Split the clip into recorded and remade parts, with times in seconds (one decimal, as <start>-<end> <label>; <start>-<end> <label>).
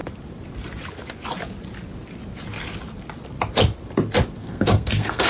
0.0-4.4 recorded; 4.4-5.3 remade